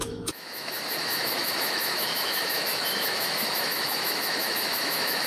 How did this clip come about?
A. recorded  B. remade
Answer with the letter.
B